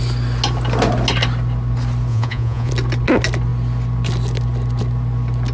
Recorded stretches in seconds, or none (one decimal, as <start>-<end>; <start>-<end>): 0.0-2.1; 2.7-5.5